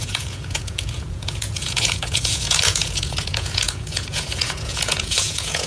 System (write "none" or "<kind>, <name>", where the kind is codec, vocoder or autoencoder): vocoder, Vocos